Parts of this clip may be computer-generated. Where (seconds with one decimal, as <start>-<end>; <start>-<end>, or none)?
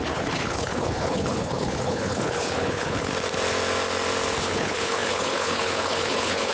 0.0-3.1; 4.4-6.5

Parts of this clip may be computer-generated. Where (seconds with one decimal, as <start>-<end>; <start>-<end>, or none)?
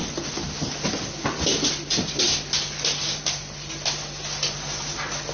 none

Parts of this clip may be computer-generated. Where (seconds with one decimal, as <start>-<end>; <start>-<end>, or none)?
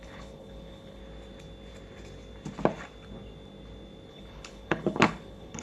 0.0-1.0; 4.1-5.6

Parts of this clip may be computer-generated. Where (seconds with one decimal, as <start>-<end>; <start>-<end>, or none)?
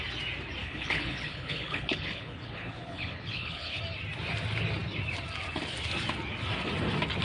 0.6-3.8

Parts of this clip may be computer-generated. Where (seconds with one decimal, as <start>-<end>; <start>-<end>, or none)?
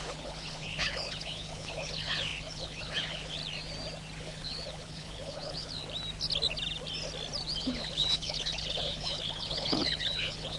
0.0-3.4; 4.2-5.8; 7.6-10.6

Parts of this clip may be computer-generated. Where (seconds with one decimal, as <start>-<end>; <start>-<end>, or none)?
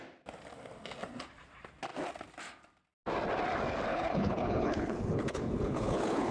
3.9-6.3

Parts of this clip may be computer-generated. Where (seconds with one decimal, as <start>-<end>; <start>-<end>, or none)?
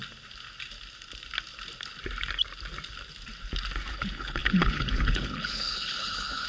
3.9-6.5